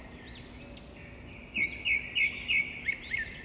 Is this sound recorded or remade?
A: recorded